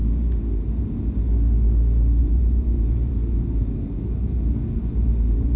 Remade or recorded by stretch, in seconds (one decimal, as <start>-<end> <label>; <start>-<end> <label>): 0.0-1.2 remade; 1.2-2.2 recorded; 2.2-5.6 remade